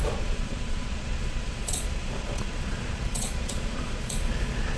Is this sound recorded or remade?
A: remade